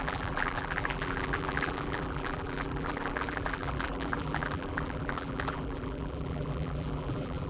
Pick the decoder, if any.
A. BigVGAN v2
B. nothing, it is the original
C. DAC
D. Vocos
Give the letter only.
A